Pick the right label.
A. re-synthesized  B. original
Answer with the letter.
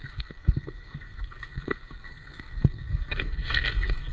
A